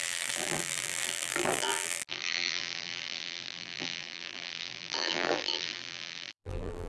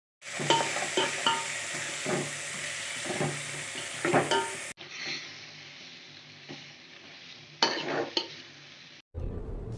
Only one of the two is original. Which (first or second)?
second